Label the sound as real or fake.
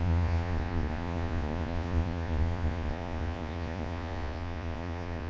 fake